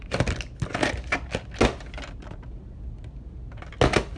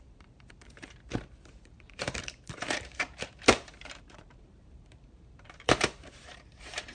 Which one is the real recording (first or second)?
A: first